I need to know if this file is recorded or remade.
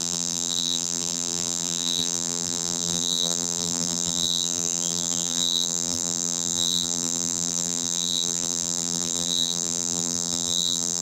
remade